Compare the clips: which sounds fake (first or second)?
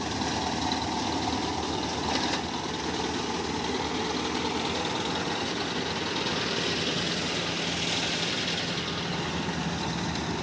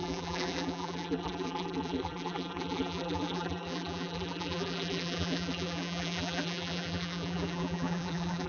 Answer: second